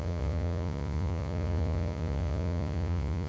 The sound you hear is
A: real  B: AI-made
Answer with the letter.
B